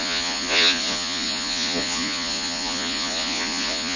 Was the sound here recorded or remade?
remade